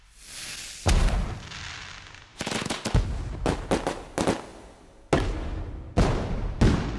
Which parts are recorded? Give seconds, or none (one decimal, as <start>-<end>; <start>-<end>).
0.0-7.0